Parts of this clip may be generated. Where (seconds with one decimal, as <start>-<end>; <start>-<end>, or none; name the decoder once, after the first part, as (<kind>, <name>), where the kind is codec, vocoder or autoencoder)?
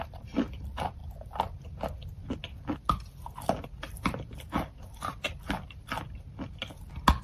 none